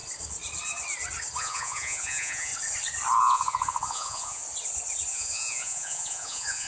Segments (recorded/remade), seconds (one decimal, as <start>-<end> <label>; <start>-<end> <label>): 0.0-1.4 recorded; 1.4-2.5 remade; 2.5-3.2 recorded; 3.2-4.4 remade; 4.4-5.1 recorded; 5.1-6.7 remade